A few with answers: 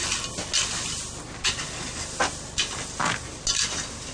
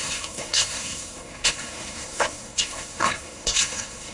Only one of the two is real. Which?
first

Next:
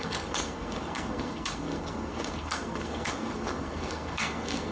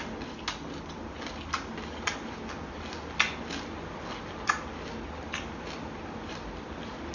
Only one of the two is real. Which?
second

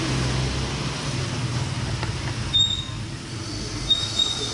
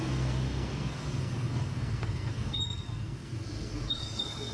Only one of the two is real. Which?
first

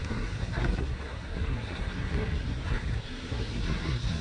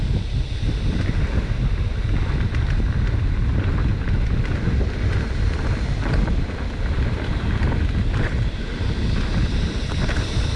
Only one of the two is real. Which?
second